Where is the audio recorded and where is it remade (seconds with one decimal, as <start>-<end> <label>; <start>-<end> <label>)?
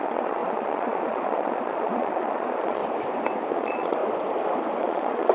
0.0-2.8 remade; 2.8-3.5 recorded; 3.5-4.0 remade; 4.0-4.8 recorded; 4.8-5.3 remade